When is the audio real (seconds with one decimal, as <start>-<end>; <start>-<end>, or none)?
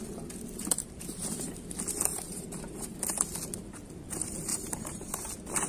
0.0-0.8; 1.5-2.1; 3.1-4.5; 5.3-5.7